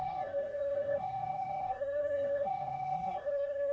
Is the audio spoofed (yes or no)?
yes